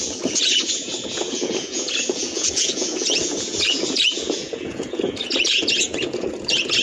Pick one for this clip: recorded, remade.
remade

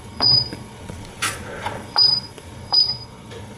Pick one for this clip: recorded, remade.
remade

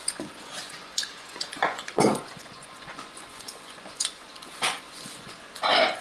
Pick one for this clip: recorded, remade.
remade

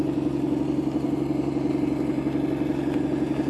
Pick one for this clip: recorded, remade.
recorded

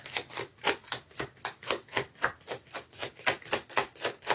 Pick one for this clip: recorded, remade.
recorded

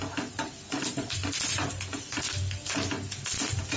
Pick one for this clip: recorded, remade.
recorded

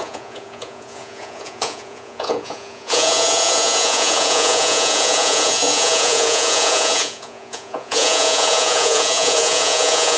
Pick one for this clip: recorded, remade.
remade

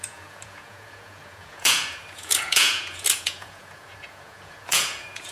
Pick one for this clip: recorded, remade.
remade